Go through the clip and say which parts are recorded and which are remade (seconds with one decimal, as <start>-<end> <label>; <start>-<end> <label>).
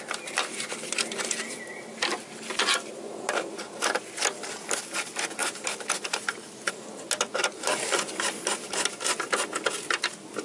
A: 0.0-5.4 recorded; 5.4-6.7 remade; 6.7-10.4 recorded